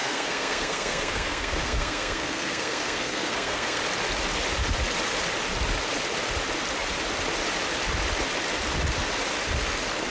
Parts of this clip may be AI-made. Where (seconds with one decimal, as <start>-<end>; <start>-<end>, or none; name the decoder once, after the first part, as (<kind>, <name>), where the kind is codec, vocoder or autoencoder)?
0.0-3.8 (codec, SNAC)